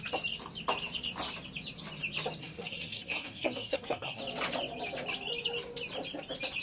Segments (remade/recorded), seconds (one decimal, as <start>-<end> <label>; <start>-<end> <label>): 0.0-2.4 recorded; 2.4-4.2 remade; 4.2-6.6 recorded